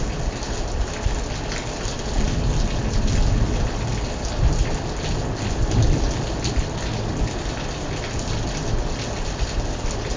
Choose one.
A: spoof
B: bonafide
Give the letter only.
B